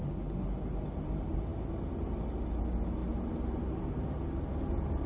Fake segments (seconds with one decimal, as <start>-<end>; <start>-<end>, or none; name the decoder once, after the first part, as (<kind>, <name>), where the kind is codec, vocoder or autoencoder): none